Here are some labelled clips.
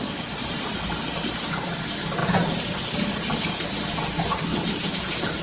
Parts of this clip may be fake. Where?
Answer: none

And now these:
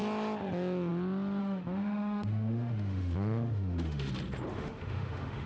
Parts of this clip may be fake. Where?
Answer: 1.4-4.1; 4.5-5.5

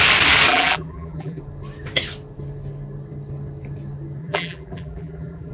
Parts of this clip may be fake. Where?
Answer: 0.5-1.4; 4.2-5.5

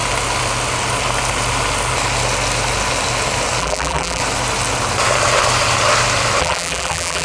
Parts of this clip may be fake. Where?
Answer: 3.6-4.2; 6.4-7.2

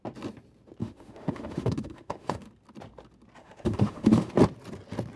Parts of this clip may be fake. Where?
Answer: 0.8-2.5; 3.4-4.3

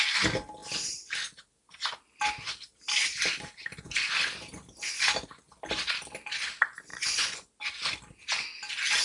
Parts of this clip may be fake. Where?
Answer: 6.9-7.5

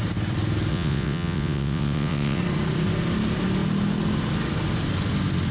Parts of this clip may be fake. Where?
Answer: 0.7-2.4

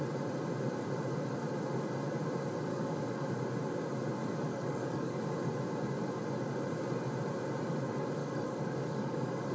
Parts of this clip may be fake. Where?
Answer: 2.7-3.3; 4.5-5.2; 8.2-9.5